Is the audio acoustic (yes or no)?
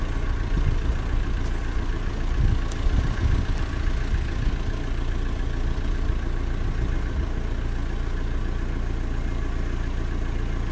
yes